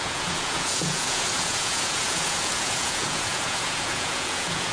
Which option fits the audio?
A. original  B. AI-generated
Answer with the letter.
B